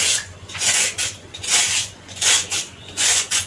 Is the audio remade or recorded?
remade